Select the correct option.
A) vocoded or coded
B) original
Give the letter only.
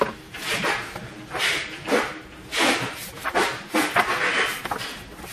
B